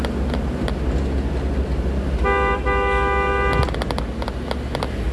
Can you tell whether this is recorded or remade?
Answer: recorded